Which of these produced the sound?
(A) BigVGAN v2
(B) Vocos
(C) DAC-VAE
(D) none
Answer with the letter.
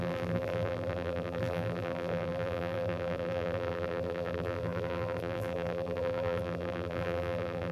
A